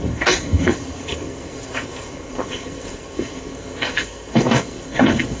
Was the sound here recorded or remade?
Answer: remade